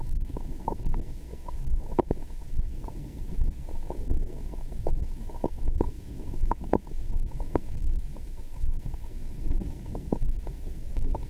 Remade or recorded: remade